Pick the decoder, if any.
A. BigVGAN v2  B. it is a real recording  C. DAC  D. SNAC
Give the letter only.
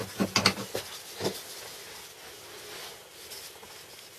B